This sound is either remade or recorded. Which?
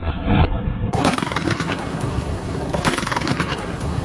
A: remade